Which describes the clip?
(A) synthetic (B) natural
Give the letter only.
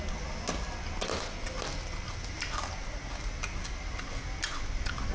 B